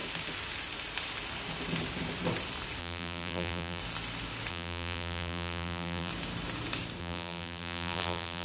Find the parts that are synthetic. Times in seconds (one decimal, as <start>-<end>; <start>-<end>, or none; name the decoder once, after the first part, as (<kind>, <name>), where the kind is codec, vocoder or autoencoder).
2.8-3.8 (vocoder, BigVGAN v2); 4.5-6.1; 7.0-8.4